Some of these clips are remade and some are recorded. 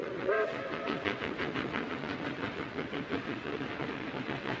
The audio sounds remade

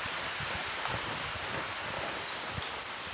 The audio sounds recorded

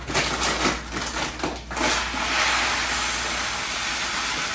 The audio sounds recorded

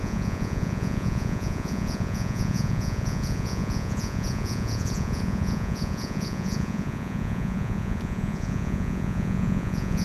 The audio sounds remade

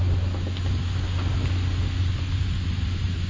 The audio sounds recorded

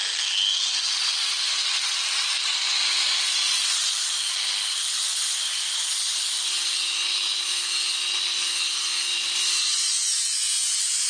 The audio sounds recorded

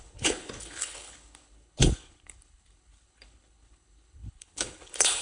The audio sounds remade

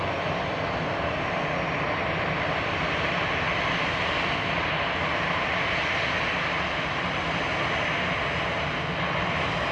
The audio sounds recorded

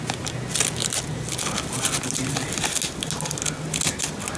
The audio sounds recorded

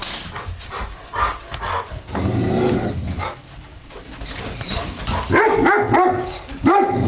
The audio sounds recorded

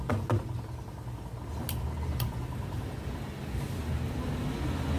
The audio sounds recorded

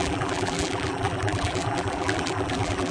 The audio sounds remade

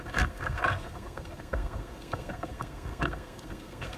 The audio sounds remade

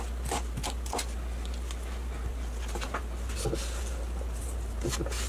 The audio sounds recorded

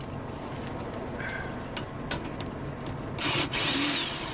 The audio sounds recorded